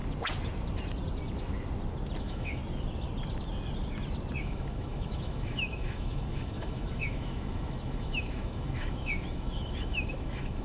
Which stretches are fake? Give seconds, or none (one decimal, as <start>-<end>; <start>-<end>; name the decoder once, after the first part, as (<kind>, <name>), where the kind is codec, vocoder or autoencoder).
2.2-2.6 (autoencoder, DAC-VAE); 4.4-10.6